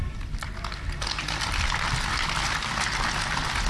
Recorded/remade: recorded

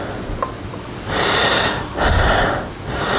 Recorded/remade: recorded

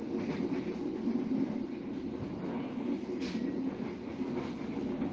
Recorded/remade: recorded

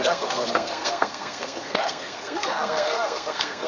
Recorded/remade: remade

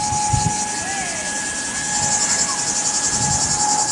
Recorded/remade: recorded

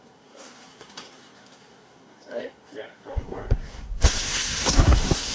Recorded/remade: remade